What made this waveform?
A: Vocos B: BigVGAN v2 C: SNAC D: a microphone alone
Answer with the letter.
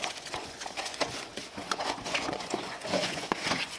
A